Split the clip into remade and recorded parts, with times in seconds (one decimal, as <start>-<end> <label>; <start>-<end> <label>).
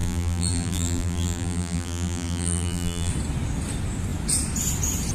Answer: 0.0-3.1 remade; 3.1-5.1 recorded